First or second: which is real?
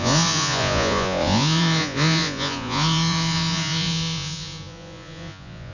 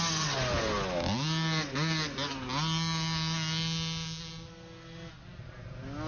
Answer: second